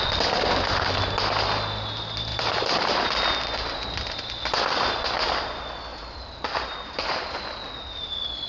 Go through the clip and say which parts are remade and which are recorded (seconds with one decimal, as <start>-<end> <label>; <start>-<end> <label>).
0.0-2.3 recorded; 2.3-3.1 remade; 3.1-5.9 recorded; 5.9-7.4 remade; 7.4-8.5 recorded